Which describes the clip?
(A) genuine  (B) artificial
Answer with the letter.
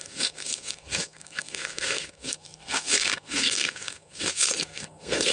B